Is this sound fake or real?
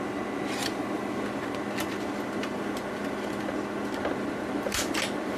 real